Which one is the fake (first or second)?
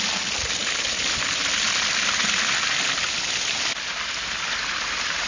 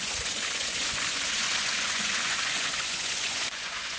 second